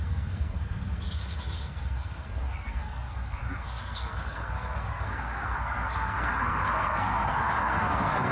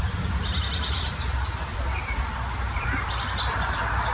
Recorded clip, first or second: second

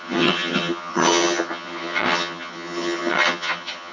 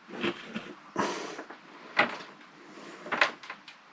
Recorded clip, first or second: second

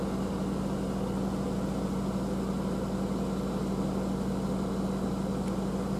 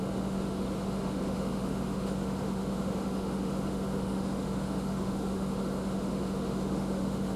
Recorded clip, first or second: first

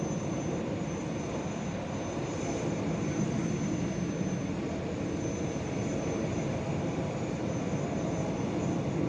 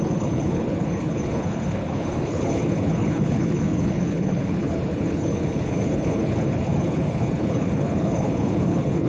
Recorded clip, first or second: first